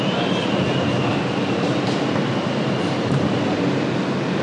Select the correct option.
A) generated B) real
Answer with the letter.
A